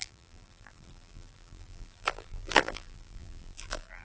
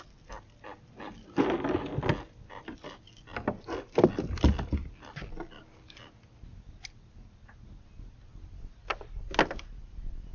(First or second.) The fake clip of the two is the first